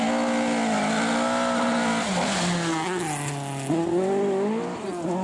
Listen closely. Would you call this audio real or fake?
real